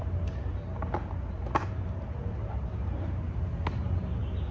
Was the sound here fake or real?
real